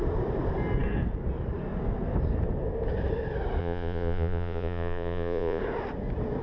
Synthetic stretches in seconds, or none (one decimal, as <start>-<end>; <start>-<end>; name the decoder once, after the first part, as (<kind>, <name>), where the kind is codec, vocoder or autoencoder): 3.6-5.6 (vocoder, Vocos)